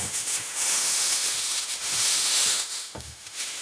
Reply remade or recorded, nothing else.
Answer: remade